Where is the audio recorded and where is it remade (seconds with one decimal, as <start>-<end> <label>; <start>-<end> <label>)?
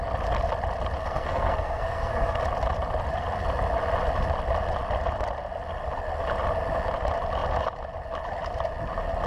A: 0.0-1.0 recorded; 1.0-2.4 remade; 2.4-9.3 recorded